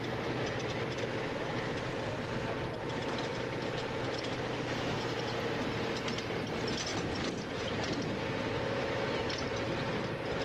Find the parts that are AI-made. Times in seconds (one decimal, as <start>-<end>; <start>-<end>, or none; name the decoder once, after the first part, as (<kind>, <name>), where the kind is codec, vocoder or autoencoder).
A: 3.3-4.3 (vocoder, BigVGAN v2); 6.9-8.2